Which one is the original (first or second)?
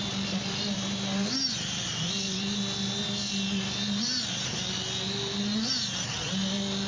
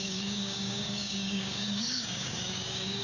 first